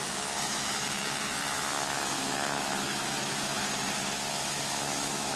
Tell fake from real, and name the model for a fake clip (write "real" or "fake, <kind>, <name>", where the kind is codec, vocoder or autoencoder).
fake, autoencoder, DAC-VAE